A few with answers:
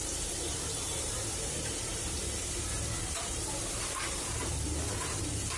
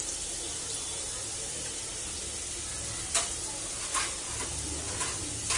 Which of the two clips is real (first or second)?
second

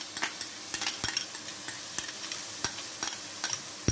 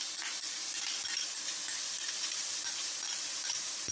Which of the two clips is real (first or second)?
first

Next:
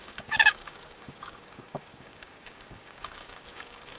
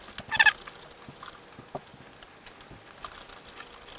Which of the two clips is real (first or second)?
second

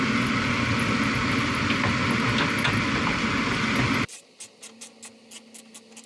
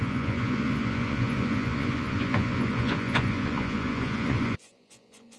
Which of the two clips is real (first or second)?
first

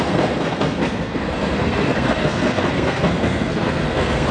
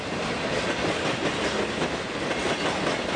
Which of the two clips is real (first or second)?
second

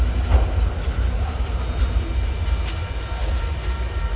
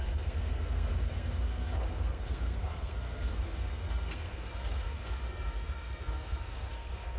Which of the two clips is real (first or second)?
first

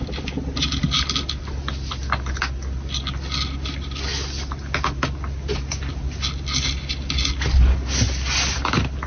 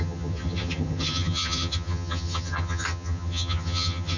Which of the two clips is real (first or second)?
first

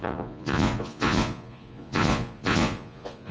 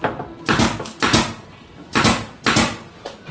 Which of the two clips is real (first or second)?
second